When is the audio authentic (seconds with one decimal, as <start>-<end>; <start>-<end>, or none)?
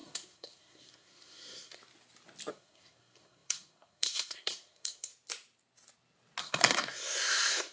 1.8-2.5; 5.1-6.4